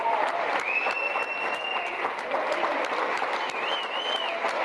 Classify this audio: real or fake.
real